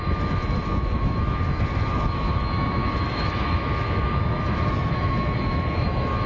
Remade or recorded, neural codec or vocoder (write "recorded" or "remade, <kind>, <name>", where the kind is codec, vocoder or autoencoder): remade, autoencoder, DAC-VAE